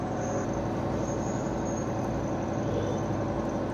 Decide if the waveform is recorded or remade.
recorded